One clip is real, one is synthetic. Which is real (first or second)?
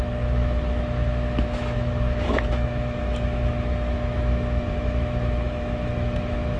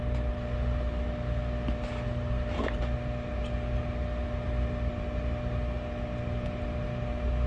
second